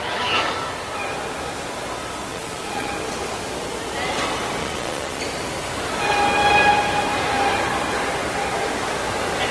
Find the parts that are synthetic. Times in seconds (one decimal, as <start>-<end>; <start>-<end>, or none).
2.3-2.9; 4.6-5.2